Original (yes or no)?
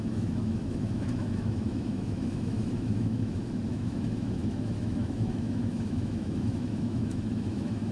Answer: no